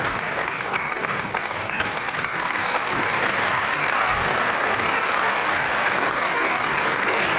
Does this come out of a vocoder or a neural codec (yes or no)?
yes